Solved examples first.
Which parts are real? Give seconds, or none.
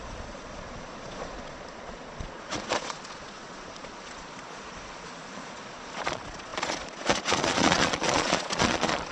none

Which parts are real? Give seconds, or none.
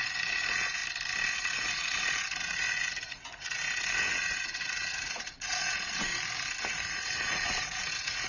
0.8-1.3; 6.1-6.6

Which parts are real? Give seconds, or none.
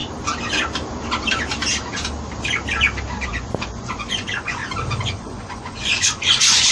0.0-3.3; 4.6-5.1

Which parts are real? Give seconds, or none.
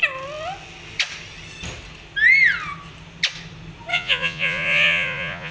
0.0-3.9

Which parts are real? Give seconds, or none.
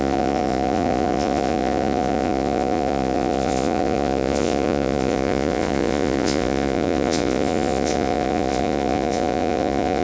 none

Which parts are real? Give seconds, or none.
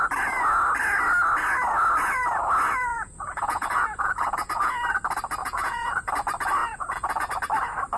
0.0-2.9; 4.7-5.4; 6.1-6.6; 7.3-8.0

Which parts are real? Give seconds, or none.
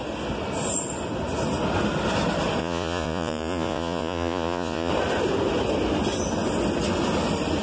0.0-2.6; 4.9-7.6